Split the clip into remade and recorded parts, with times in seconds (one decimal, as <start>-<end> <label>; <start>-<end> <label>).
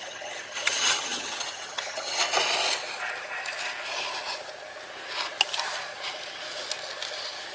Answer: 0.0-2.2 remade; 2.2-7.5 recorded